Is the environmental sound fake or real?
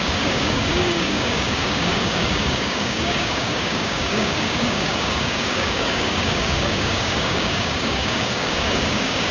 fake